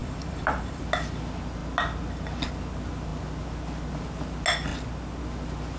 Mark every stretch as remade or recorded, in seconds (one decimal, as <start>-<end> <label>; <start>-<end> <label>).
0.0-0.8 remade; 0.8-5.8 recorded